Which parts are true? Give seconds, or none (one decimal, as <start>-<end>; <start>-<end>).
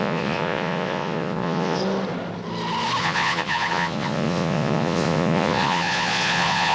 1.8-3.0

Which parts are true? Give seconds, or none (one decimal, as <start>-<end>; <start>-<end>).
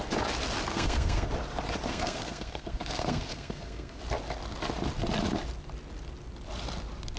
0.0-0.7; 1.3-1.9; 4.0-7.2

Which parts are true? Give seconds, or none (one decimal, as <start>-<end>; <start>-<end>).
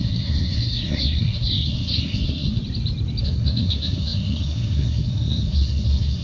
2.6-3.2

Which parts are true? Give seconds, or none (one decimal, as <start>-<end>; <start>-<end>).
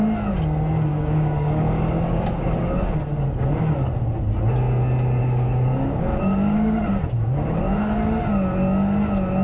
0.0-0.9; 2.9-5.2; 8.2-9.4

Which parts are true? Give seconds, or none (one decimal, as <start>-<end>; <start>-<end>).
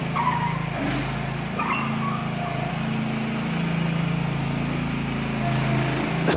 0.0-6.4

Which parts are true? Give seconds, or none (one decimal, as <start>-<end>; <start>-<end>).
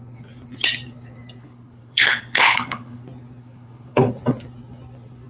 0.0-1.4; 3.0-3.4; 4.1-5.3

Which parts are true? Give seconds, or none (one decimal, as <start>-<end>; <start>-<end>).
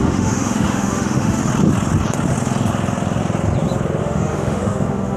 1.4-4.0